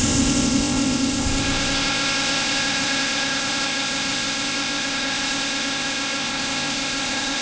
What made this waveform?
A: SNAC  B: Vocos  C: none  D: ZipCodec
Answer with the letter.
D